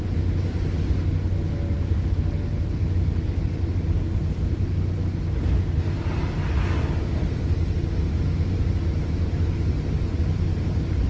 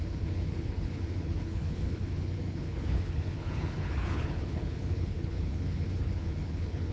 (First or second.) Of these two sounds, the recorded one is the first